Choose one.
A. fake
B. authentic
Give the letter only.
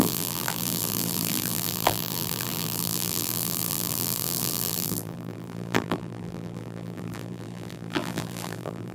A